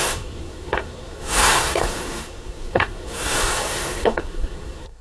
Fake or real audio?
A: fake